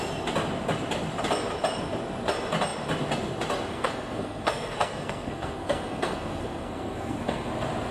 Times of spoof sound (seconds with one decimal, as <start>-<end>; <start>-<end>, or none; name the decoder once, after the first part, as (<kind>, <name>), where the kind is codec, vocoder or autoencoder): 3.7-7.5 (codec, SNAC)